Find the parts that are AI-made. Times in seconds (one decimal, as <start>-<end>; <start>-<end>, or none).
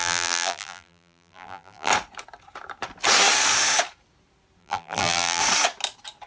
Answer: 0.0-1.9; 4.6-5.4